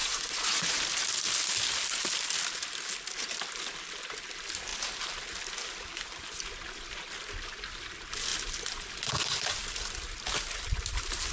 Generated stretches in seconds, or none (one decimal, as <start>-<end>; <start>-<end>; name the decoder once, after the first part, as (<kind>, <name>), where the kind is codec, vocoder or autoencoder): 0.0-0.8 (vocoder, Vocos)